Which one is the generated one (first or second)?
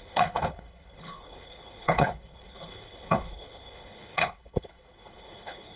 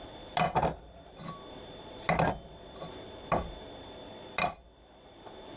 first